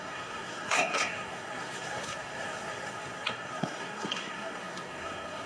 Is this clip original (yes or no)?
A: no